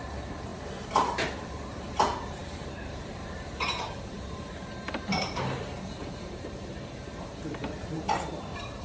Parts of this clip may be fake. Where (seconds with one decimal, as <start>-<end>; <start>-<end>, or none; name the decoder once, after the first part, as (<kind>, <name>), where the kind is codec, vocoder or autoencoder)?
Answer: 0.0-8.8 (vocoder, BigVGAN v2)